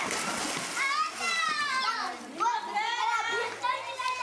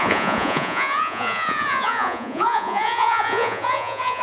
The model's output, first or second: second